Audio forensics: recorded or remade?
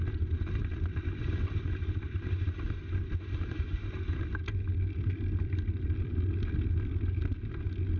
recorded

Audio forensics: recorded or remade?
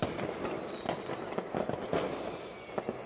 recorded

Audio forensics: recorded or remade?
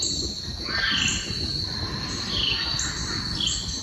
recorded